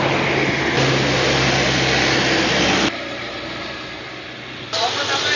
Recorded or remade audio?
recorded